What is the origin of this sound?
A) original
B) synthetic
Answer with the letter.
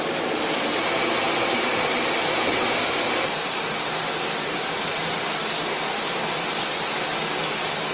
A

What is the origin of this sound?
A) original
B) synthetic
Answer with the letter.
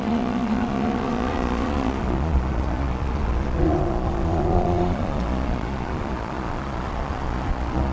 B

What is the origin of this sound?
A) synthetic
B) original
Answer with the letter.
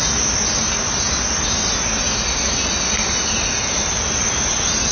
B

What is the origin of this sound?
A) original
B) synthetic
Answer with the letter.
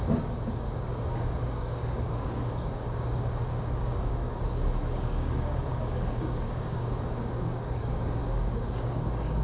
B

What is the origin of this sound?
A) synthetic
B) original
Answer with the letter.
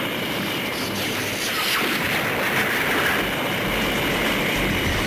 B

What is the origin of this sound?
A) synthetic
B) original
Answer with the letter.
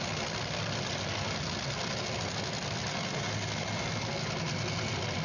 B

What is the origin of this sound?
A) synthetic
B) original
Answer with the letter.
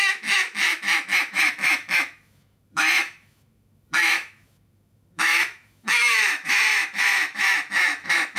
A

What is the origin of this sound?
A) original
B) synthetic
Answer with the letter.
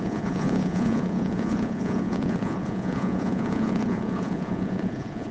B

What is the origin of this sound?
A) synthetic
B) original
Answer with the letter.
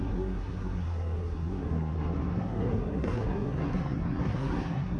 A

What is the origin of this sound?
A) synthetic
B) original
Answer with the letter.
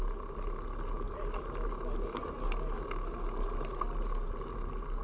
B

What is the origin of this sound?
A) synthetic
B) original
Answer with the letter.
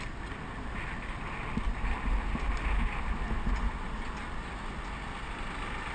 B